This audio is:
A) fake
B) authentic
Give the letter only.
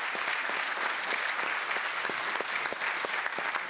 B